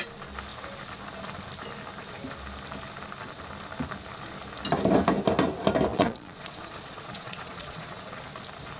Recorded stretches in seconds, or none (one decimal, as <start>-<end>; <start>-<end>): 0.0-5.9; 8.2-8.8